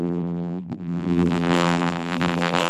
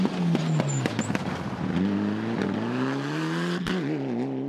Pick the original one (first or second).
second